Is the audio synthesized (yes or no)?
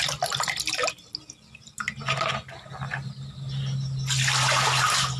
no